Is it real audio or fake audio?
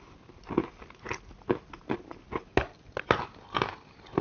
real